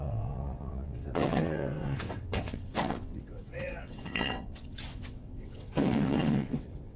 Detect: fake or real fake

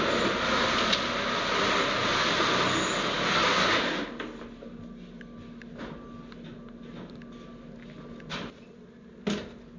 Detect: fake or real real